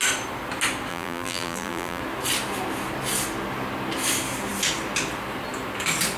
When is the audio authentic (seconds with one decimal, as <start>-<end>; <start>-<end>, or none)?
0.0-0.9; 2.0-6.2